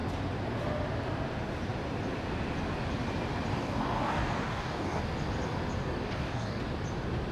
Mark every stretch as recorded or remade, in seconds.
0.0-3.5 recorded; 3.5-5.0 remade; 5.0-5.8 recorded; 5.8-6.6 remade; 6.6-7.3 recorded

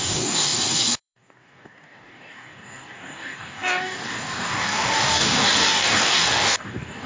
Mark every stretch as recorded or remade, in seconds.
0.0-7.1 remade

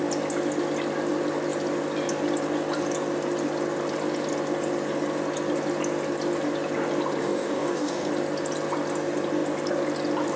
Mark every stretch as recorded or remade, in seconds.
0.0-7.2 recorded; 7.2-8.1 remade; 8.1-10.4 recorded